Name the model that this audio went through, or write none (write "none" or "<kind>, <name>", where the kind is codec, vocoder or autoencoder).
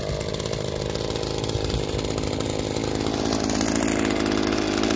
none